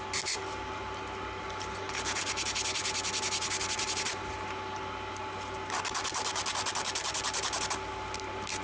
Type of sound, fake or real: real